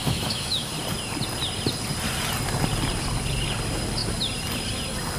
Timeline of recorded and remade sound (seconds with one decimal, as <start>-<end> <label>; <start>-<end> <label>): 0.0-0.7 remade; 0.7-5.2 recorded